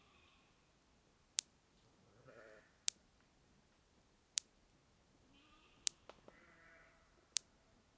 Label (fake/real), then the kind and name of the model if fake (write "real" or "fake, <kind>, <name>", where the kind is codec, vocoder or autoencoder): real